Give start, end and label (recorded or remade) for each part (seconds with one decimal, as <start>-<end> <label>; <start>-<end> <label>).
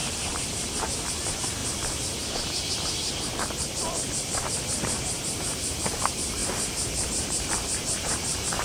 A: 0.0-8.6 remade